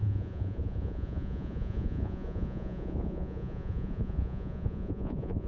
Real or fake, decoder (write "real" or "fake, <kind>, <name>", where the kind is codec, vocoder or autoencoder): fake, vocoder, Vocos